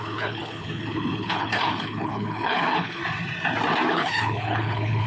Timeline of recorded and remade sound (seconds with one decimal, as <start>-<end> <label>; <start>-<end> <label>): 0.0-3.0 remade; 3.0-3.9 recorded; 3.9-5.1 remade